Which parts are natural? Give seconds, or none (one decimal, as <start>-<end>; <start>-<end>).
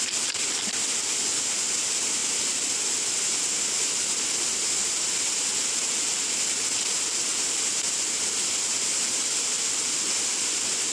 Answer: 0.0-10.9